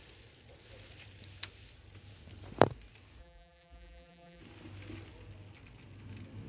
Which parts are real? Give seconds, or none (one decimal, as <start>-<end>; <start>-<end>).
0.0-3.2; 4.4-6.5